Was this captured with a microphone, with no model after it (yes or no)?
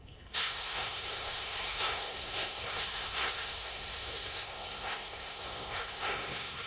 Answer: no